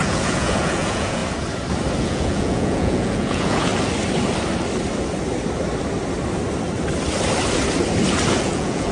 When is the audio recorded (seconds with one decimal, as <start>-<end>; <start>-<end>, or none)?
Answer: 1.2-2.0; 3.7-8.4